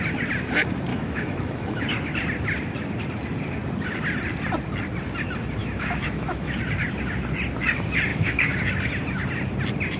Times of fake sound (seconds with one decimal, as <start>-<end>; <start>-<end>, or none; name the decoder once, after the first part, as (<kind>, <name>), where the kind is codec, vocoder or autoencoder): 0.9-1.9 (autoencoder, DAC-VAE); 5.6-6.6; 8.1-8.6